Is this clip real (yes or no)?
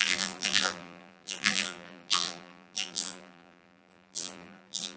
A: no